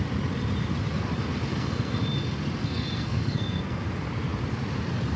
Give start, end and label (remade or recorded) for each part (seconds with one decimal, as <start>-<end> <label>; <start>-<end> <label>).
0.0-1.5 recorded; 1.5-2.0 remade; 2.0-2.6 recorded; 2.6-3.8 remade; 3.8-5.2 recorded

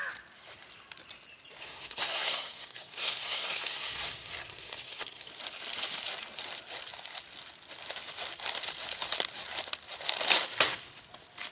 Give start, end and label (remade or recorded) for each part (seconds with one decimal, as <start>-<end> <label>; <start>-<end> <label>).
0.0-1.6 recorded; 1.6-5.3 remade; 5.3-11.5 recorded

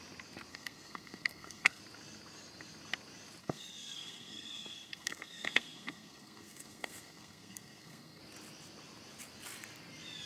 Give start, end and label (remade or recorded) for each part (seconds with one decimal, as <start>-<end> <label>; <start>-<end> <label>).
0.0-0.5 recorded; 0.5-1.8 remade; 1.8-3.4 recorded; 3.4-8.2 remade; 8.2-10.3 recorded

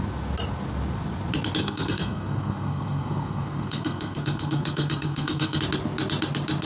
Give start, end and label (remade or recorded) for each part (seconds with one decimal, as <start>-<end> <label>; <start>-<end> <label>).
0.0-1.6 recorded; 1.6-5.6 remade; 5.6-6.6 recorded